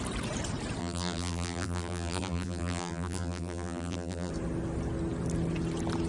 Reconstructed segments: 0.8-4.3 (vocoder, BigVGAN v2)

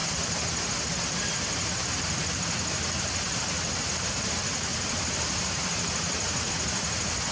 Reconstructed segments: 0.7-7.3 (vocoder, BigVGAN v2)